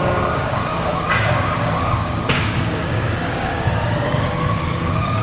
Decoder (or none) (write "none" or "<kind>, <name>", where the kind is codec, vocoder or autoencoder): codec, DAC